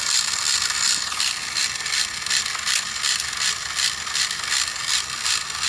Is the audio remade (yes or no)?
no